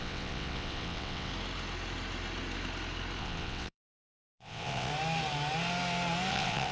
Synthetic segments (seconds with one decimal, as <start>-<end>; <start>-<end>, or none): 0.0-1.3; 3.2-4.9; 6.3-6.7